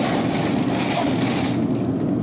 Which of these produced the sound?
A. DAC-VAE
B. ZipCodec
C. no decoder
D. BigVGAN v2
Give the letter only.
C